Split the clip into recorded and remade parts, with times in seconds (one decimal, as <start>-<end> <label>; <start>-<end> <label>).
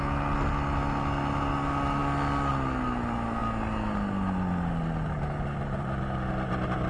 0.0-6.9 recorded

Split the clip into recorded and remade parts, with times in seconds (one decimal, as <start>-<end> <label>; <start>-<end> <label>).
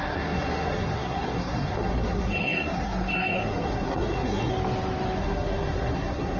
0.0-4.5 remade; 4.5-5.2 recorded; 5.2-6.4 remade